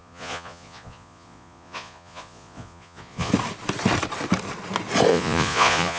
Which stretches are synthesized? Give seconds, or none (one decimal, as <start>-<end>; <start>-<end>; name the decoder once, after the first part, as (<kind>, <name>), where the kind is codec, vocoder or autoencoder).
0.0-3.3 (vocoder, Vocos); 5.1-6.0